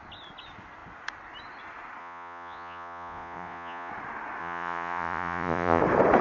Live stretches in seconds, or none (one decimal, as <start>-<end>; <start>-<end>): 0.0-2.0; 3.9-4.4; 5.8-6.2